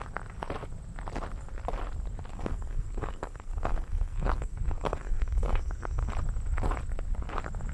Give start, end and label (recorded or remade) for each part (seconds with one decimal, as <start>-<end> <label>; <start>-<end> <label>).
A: 0.0-2.3 recorded; 2.3-6.1 remade; 6.1-7.7 recorded